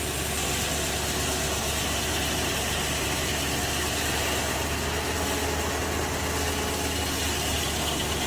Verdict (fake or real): real